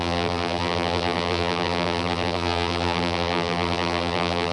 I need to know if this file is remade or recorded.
remade